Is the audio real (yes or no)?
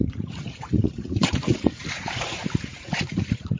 no